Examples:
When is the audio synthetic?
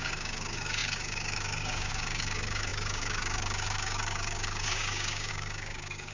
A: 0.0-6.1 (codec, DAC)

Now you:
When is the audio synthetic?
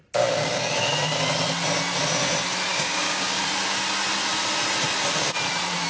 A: 2.7-3.4 (codec, DAC)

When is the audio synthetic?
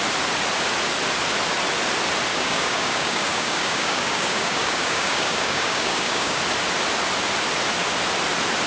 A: 2.3-6.4 (codec, DAC)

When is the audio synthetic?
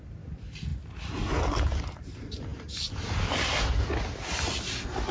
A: none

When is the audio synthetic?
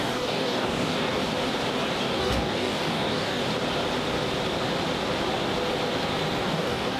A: 0.0-1.2 (codec, DAC); 2.0-3.4; 6.4-7.0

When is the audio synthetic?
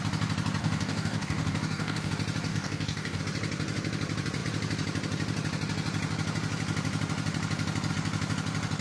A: 0.6-2.1 (codec, DAC); 2.5-3.2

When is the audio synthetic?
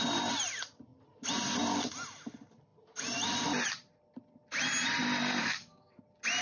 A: 5.4-6.0 (codec, DAC)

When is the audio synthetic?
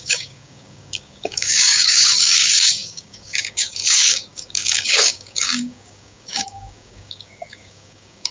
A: 0.0-8.3 (codec, DAC)